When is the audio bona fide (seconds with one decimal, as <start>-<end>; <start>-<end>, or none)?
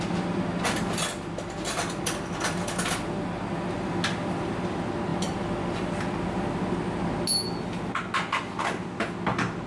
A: 0.0-5.1; 6.7-9.7